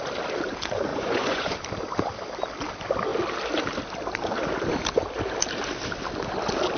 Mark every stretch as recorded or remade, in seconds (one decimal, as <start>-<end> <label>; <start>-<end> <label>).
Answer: 0.0-0.9 recorded; 0.9-1.5 remade; 1.5-6.8 recorded